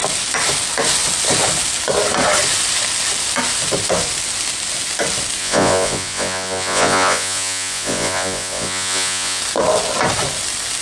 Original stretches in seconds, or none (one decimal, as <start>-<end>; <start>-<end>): 0.0-5.4; 9.4-10.8